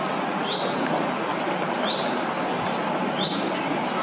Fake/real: real